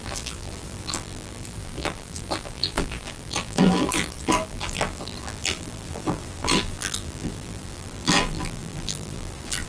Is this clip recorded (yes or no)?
no